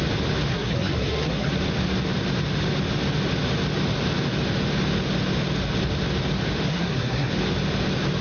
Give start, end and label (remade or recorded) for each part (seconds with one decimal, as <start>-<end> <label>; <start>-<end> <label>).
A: 0.0-0.5 recorded; 0.5-1.5 remade; 1.5-6.7 recorded; 6.7-7.3 remade; 7.3-8.2 recorded